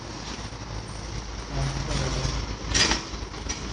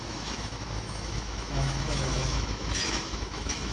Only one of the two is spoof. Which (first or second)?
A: second